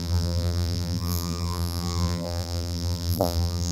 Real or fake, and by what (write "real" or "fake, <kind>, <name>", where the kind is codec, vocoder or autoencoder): fake, vocoder, BigVGAN v2